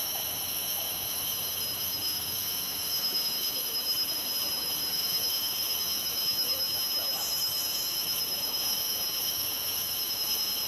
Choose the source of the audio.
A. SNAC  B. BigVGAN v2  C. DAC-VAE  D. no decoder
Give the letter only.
C